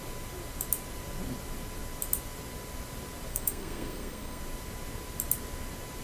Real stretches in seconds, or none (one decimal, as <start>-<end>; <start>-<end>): 0.0-3.3; 4.4-6.0